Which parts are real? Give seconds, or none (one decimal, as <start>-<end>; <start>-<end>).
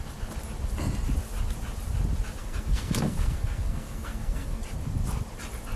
0.0-2.4; 4.6-5.8